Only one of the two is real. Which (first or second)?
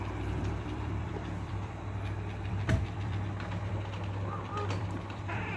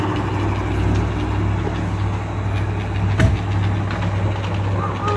second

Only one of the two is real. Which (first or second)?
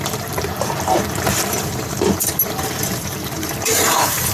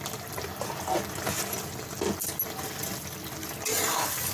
second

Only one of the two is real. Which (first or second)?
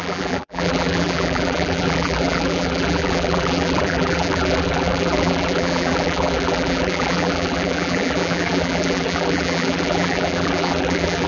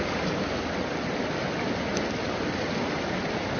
second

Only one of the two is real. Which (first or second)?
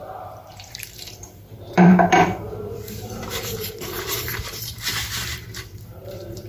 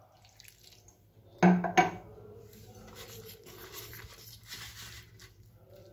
second